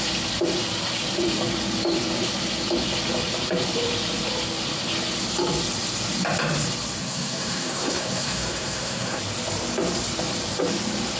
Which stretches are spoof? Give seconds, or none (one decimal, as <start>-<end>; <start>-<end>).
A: 7.0-9.2